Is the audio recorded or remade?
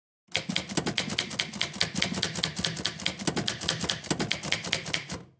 recorded